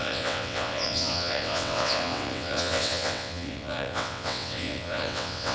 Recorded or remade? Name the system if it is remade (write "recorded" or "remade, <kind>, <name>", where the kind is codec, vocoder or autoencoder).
remade, vocoder, WaveNeXt